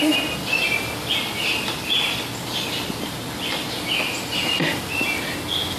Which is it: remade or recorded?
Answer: recorded